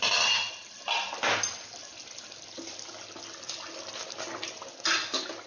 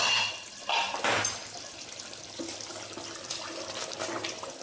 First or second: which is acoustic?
first